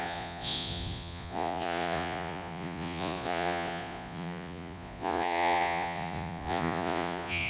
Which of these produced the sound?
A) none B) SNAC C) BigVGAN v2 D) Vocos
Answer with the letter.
D